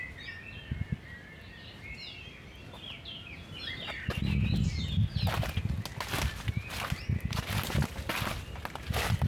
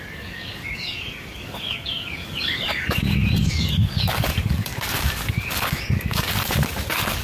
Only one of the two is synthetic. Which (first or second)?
second